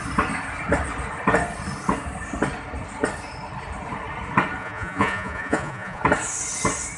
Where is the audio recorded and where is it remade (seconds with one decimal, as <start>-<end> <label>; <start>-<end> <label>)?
0.0-4.6 recorded; 4.6-6.0 remade; 6.0-7.0 recorded